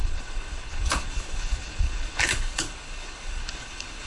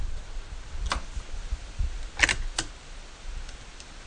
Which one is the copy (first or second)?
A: first